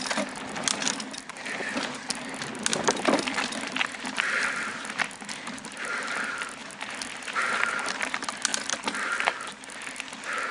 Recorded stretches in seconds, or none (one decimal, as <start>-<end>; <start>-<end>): 0.0-2.7; 5.0-8.5; 9.1-10.5